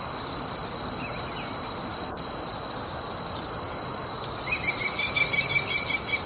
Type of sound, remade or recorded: recorded